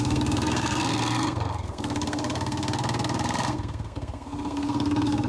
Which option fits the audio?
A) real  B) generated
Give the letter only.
B